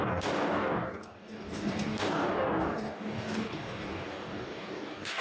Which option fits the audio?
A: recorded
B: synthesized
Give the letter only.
B